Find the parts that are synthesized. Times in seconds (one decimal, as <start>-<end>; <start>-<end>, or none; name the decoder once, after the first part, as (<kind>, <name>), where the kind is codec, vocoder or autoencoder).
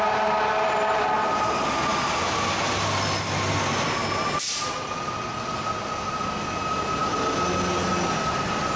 none